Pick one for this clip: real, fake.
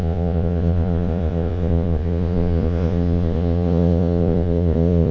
fake